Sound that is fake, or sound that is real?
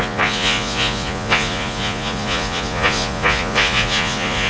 fake